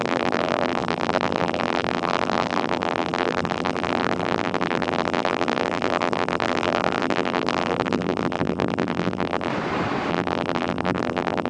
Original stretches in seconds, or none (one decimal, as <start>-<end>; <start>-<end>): 9.5-10.1